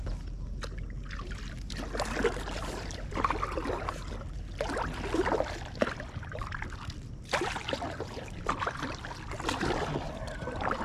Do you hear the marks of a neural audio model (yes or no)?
no